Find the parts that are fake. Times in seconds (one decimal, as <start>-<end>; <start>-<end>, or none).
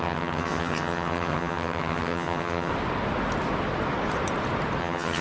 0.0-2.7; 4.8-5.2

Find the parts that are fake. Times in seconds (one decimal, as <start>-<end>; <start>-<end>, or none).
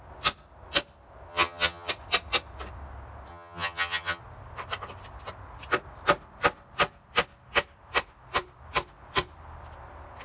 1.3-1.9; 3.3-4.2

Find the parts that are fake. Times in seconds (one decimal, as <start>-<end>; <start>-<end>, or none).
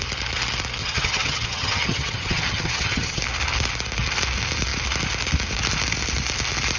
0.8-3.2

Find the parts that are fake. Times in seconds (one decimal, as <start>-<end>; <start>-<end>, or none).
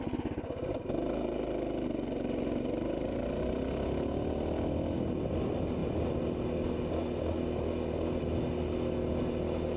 none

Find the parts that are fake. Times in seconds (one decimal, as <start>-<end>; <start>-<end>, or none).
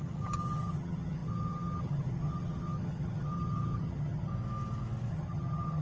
0.0-4.3; 5.1-5.8